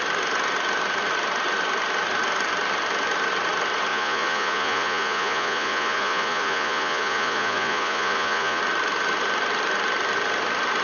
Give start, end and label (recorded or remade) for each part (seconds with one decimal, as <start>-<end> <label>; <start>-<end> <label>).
0.0-3.9 recorded; 3.9-8.6 remade; 8.6-10.8 recorded